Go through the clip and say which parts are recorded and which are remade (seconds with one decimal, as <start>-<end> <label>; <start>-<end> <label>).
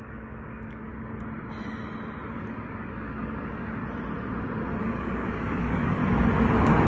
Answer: 0.0-0.9 remade; 0.9-2.3 recorded; 2.3-3.8 remade; 3.8-4.8 recorded; 4.8-6.0 remade; 6.0-6.9 recorded